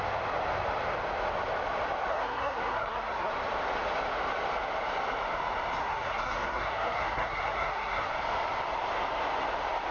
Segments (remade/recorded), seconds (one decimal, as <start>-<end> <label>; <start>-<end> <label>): 0.0-2.1 recorded; 2.1-3.3 remade; 3.3-5.8 recorded; 5.8-8.1 remade; 8.1-9.9 recorded